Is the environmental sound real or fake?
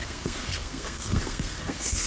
fake